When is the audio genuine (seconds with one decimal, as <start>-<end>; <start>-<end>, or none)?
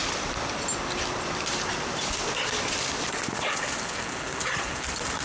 0.0-5.2